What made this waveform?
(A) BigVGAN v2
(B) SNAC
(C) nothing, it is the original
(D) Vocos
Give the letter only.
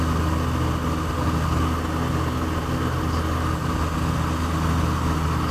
C